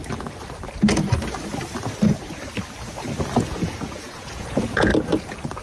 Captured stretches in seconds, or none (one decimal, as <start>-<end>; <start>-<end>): 0.0-3.4; 4.9-5.6